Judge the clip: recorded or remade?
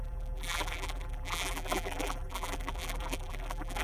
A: remade